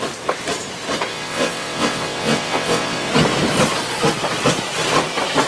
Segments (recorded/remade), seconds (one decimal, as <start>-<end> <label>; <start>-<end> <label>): 0.0-1.1 recorded; 1.1-3.1 remade; 3.1-5.5 recorded